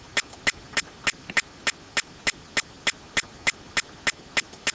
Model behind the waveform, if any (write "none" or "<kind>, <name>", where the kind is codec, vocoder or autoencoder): none